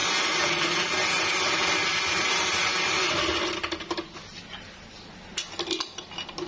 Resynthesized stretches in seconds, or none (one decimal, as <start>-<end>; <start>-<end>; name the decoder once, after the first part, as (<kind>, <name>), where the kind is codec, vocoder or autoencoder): none